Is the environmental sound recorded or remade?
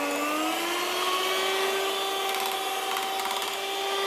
recorded